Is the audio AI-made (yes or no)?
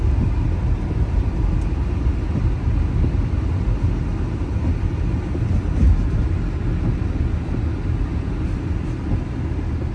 no